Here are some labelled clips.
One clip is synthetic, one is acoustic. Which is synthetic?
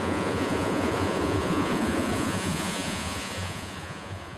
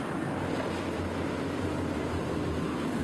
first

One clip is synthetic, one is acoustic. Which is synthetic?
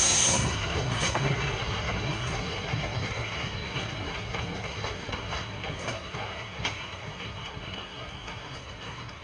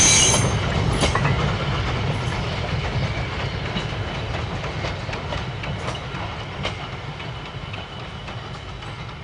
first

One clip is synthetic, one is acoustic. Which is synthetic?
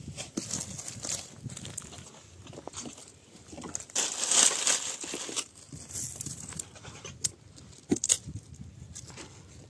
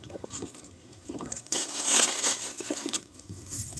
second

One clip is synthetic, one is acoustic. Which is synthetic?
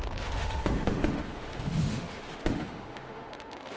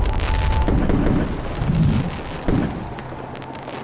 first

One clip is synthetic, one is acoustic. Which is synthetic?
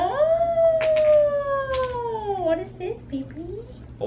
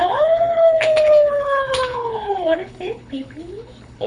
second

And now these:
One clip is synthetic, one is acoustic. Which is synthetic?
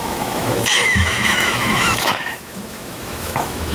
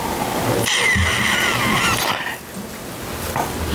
first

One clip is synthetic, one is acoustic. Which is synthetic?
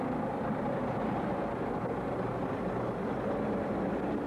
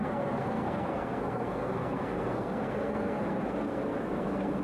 second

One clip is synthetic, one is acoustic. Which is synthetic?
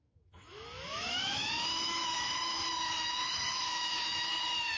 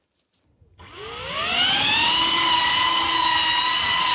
first